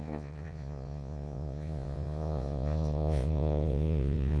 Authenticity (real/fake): fake